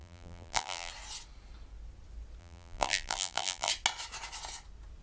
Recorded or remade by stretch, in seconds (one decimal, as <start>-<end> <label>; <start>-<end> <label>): 0.0-0.9 remade; 0.9-2.4 recorded; 2.4-3.7 remade; 3.7-5.0 recorded